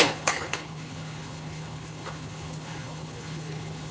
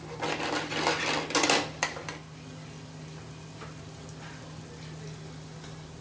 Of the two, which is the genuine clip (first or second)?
second